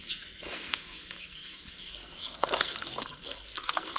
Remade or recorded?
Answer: remade